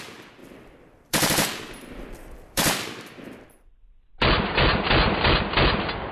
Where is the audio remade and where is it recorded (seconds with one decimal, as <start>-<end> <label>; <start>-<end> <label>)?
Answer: 0.0-0.4 recorded; 0.4-4.1 remade; 4.1-6.1 recorded